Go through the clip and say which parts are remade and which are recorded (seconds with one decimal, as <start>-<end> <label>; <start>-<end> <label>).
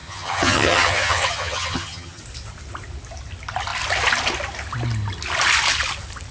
0.0-2.2 remade; 2.2-6.3 recorded